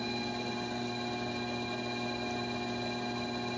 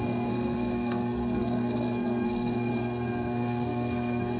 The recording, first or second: first